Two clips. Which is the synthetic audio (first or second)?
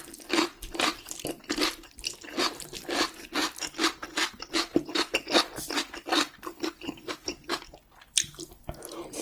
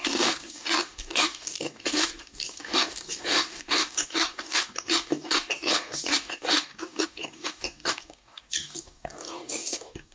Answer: second